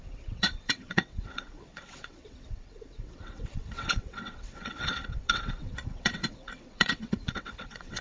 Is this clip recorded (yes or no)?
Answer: no